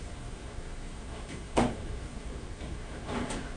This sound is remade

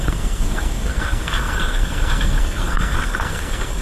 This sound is remade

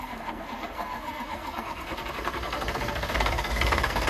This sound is remade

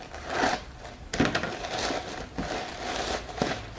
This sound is recorded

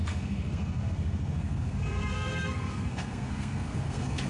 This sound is remade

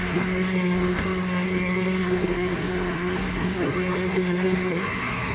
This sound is remade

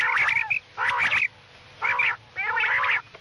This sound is recorded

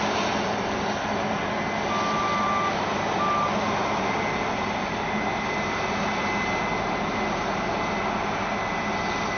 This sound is recorded